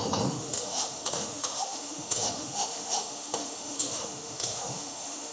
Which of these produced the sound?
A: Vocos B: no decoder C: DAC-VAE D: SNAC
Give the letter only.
C